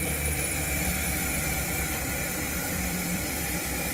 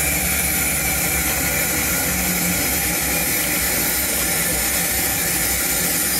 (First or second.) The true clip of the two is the second